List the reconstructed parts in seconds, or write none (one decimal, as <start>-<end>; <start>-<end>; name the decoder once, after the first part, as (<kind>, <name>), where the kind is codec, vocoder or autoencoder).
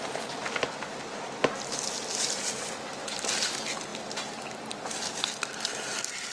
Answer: none